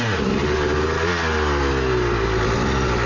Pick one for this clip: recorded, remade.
recorded